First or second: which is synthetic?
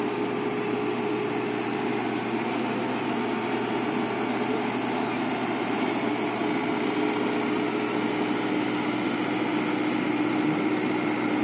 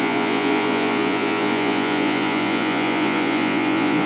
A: second